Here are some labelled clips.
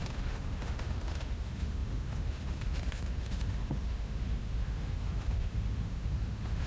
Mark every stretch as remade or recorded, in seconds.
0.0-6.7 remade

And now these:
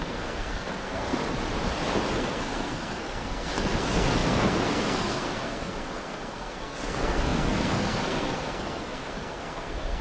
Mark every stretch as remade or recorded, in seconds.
0.0-1.2 remade; 1.2-2.1 recorded; 2.1-10.0 remade